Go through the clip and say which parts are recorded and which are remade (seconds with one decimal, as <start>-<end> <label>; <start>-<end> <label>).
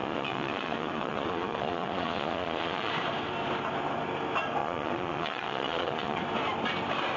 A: 0.0-2.9 remade; 2.9-4.6 recorded; 4.6-6.2 remade; 6.2-7.2 recorded